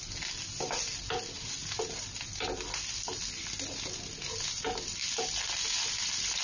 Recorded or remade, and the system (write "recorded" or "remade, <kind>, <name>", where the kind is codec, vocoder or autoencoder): recorded